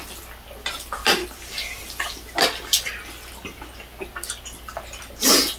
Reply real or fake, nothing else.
real